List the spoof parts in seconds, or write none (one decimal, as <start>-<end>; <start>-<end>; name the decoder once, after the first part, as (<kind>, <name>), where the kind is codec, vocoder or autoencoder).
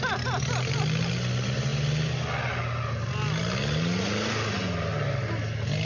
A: none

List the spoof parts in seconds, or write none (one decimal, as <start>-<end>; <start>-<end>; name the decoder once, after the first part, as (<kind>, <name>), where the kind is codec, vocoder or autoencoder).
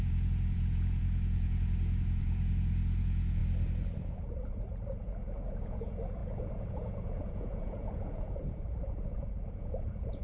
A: 0.0-3.4 (vocoder, Vocos); 5.0-10.2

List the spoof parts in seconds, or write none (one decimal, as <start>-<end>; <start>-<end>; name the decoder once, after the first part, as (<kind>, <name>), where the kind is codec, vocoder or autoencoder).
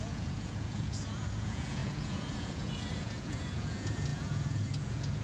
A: 0.0-5.2 (vocoder, Vocos)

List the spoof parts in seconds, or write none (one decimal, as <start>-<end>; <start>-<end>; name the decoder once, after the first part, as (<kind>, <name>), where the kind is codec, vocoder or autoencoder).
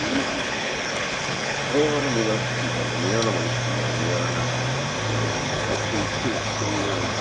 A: 0.0-1.6 (codec, HILCodec); 5.4-7.2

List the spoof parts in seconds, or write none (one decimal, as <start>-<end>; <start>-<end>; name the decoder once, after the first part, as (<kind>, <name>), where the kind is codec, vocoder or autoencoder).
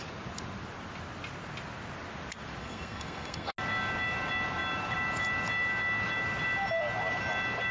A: 2.6-3.5 (codec, SNAC)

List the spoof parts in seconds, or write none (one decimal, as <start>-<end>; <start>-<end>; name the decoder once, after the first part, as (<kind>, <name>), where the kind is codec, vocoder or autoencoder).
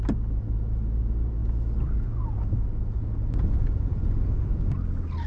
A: 1.4-4.6 (vocoder, Vocos)